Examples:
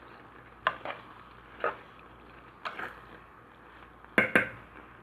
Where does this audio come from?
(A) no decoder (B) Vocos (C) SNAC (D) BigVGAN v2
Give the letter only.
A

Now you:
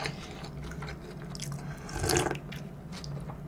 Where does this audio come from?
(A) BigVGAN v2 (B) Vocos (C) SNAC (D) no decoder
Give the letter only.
D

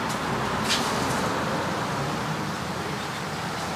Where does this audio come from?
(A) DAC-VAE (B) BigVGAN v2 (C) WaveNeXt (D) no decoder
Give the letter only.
D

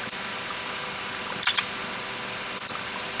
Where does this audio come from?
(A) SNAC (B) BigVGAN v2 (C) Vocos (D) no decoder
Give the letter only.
D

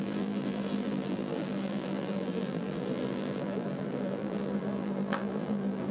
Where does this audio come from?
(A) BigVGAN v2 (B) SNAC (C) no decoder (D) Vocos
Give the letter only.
A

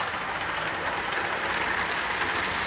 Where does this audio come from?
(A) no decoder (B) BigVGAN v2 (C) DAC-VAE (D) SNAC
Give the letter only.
A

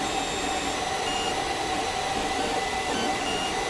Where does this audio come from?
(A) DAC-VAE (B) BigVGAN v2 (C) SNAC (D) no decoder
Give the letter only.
D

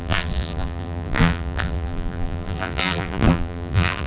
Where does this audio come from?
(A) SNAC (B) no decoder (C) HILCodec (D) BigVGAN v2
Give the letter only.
D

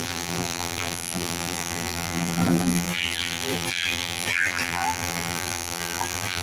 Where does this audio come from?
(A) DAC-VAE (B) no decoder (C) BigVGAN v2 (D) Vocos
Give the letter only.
C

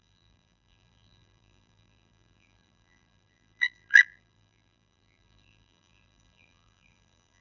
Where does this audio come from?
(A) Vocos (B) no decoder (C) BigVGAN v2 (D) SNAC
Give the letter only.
C